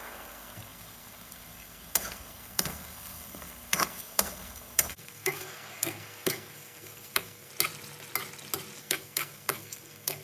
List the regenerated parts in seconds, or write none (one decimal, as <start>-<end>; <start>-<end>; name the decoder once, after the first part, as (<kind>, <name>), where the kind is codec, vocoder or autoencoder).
0.0-7.5 (codec, SNAC); 8.8-10.2